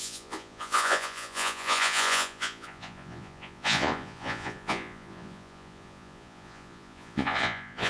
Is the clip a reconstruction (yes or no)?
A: yes